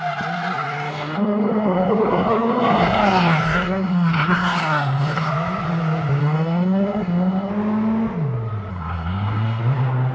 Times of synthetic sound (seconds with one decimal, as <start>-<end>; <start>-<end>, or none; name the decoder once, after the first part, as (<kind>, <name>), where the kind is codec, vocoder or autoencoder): 0.9-5.3 (codec, SNAC); 6.2-7.5; 8.7-9.6